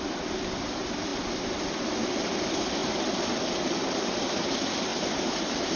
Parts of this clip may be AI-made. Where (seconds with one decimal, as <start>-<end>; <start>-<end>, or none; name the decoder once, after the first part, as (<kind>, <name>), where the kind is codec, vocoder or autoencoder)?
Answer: 4.9-5.8 (vocoder, BigVGAN v2)